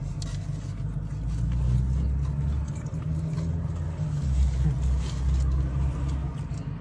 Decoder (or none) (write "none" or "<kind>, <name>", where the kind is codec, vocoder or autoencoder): none